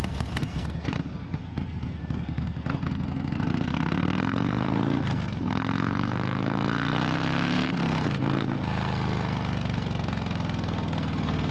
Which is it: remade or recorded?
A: remade